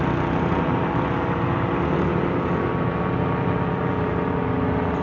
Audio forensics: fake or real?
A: real